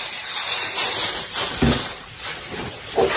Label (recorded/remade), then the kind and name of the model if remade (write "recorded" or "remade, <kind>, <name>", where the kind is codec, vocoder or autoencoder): recorded